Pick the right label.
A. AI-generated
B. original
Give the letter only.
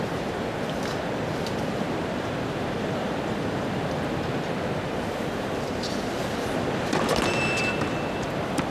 A